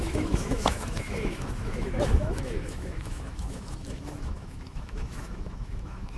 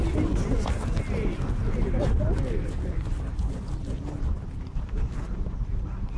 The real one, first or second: second